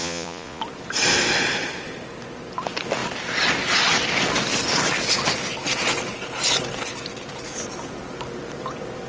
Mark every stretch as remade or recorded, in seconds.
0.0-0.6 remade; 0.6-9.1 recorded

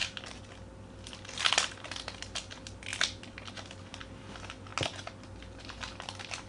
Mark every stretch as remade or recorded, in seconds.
0.0-6.5 recorded

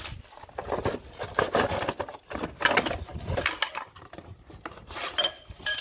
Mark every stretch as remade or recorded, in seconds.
0.0-5.8 recorded

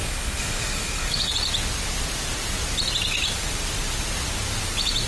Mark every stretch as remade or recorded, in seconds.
0.0-1.3 remade; 1.3-5.1 recorded

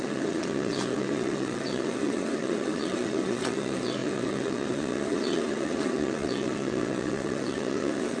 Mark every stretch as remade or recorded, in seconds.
0.0-8.2 remade

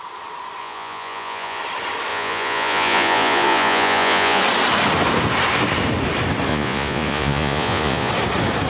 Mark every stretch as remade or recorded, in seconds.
0.0-0.6 recorded; 0.6-1.6 remade; 1.6-2.1 recorded; 2.1-4.4 remade; 4.4-6.5 recorded; 6.5-8.1 remade; 8.1-8.7 recorded